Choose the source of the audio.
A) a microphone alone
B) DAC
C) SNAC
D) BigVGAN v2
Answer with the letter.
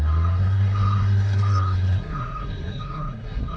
C